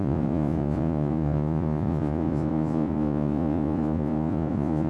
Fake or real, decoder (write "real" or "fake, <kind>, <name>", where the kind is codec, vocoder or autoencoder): fake, vocoder, Vocos